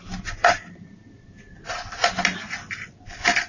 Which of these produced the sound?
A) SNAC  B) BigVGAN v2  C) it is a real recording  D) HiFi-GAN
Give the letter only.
C